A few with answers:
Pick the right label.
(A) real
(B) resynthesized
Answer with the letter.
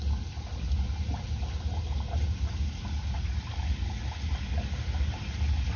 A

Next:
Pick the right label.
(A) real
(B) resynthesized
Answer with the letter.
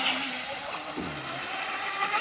A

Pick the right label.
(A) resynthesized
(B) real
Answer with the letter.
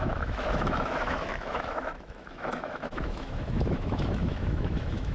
A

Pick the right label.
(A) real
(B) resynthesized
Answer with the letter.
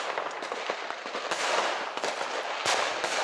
A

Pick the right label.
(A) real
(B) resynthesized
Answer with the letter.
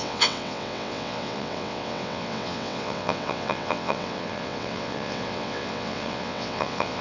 B